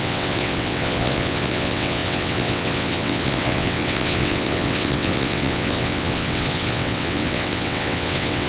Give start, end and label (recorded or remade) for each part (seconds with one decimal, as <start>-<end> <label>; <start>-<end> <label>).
0.0-8.5 remade